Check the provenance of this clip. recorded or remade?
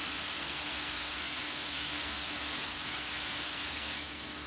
remade